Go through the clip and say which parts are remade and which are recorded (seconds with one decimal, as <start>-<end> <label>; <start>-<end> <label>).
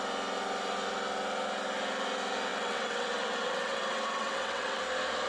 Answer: 0.0-2.5 recorded; 2.5-4.8 remade; 4.8-5.3 recorded